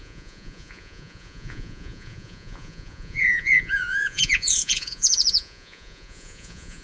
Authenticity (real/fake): fake